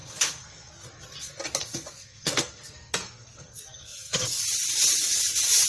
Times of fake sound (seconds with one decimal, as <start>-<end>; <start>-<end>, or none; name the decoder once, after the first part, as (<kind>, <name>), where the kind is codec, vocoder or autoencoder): 0.0-0.7 (codec, SNAC); 1.6-4.4